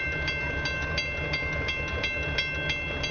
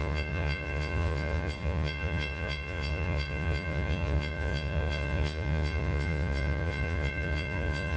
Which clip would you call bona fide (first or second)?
first